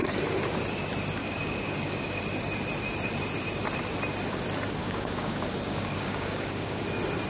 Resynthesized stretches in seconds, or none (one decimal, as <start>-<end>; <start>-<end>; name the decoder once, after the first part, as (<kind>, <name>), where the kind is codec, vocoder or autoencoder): 1.2-2.2 (codec, DAC); 4.8-6.8